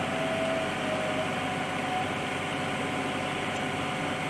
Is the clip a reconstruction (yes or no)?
no